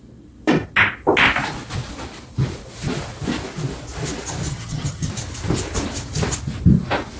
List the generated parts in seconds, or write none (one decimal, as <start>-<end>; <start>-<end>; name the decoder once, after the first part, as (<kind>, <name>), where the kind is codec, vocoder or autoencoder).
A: 4.5-5.1 (vocoder, HiFi-GAN)